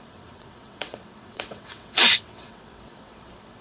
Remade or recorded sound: remade